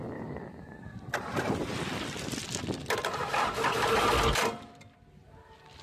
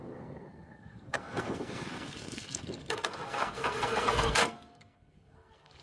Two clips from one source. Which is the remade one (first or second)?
second